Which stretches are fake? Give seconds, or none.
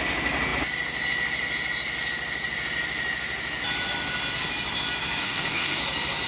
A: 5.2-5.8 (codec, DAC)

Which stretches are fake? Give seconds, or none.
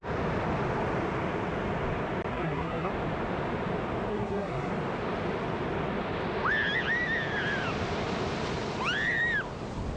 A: 2.3-2.9 (codec, SNAC); 4.1-4.7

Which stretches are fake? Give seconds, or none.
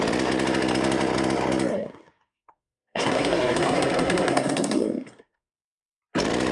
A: 1.7-5.6 (codec, SNAC)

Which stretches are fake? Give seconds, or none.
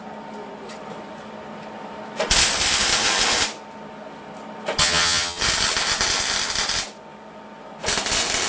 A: 4.8-5.4 (vocoder, HiFi-GAN)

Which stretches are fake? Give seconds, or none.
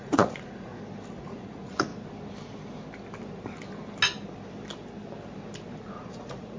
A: 0.0-0.7 (vocoder, Vocos); 1.2-1.9; 5.8-6.6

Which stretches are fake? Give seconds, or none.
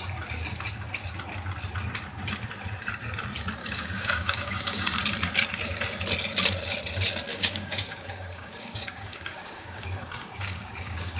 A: 3.6-4.9 (codec, DAC); 7.3-11.2